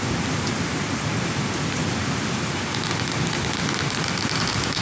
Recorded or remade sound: recorded